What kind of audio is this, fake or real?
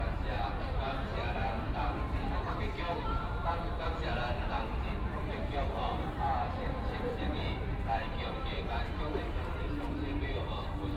fake